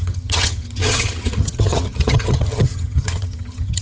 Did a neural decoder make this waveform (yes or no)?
yes